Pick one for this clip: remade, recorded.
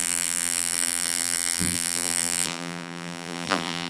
remade